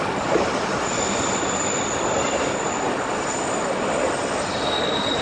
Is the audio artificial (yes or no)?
no